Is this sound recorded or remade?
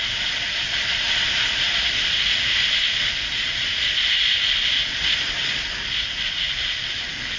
recorded